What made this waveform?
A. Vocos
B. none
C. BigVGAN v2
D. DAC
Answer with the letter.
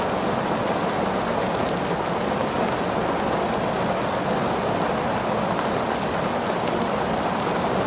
B